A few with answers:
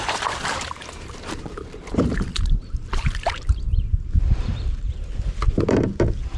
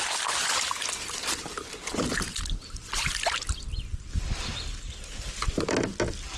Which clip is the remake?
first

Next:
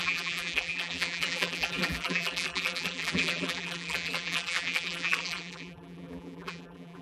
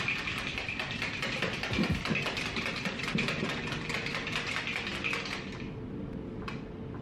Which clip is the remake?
first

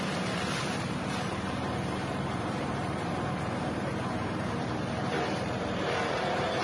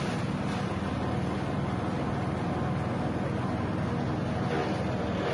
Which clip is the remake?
first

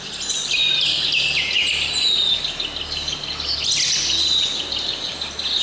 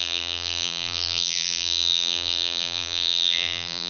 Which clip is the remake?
second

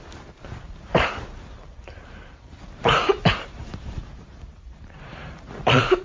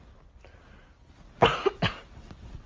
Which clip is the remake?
first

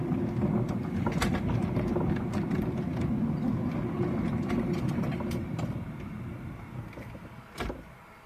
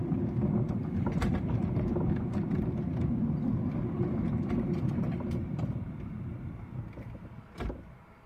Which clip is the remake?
second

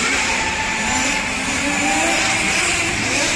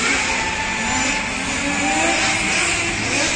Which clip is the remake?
first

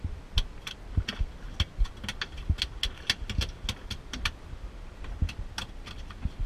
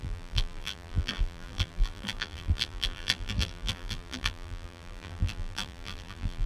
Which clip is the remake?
second